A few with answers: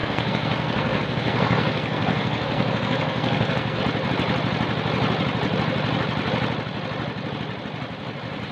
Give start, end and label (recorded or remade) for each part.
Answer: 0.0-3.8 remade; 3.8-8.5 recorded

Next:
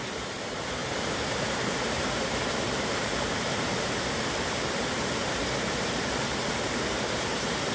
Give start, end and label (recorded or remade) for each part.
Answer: 0.0-5.4 remade; 5.4-5.9 recorded; 5.9-7.7 remade